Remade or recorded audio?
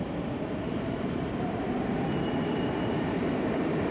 remade